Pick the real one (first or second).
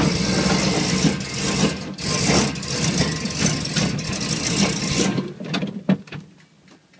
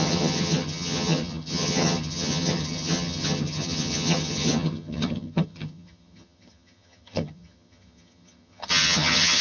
first